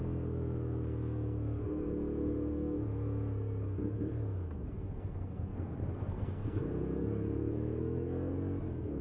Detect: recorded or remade remade